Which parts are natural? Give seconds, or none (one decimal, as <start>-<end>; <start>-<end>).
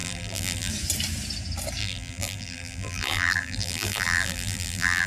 0.7-1.8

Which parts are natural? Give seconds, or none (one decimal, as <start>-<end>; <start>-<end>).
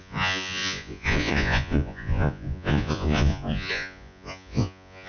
none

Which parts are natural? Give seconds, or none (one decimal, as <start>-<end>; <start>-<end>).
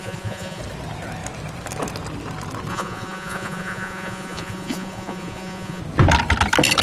0.6-2.7; 5.8-6.8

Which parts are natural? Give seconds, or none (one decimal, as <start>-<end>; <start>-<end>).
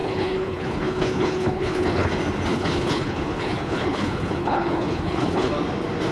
2.1-2.5; 5.5-6.1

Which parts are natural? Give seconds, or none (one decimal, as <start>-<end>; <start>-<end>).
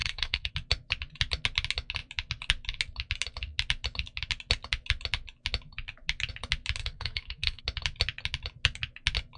0.5-6.8; 7.6-9.4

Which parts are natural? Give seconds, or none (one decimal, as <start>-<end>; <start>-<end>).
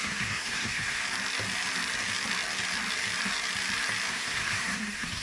1.0-4.1